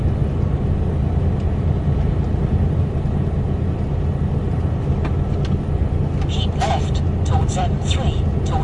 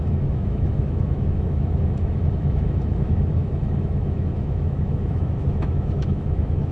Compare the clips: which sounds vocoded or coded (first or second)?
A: second